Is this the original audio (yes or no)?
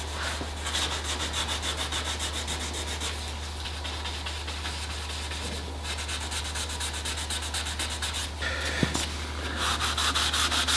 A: yes